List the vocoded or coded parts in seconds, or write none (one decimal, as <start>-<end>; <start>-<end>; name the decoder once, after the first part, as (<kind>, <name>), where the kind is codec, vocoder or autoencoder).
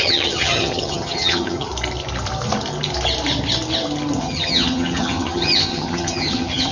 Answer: 0.0-1.7 (vocoder, HiFi-GAN); 4.2-6.7